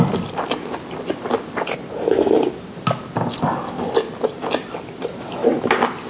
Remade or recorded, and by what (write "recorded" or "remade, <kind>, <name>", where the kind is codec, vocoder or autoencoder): recorded